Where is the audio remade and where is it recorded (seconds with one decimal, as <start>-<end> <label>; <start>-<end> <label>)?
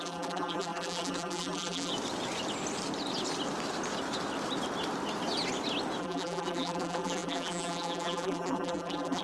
0.0-1.9 remade; 1.9-6.0 recorded; 6.0-9.2 remade